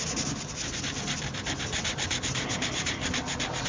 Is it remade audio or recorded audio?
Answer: recorded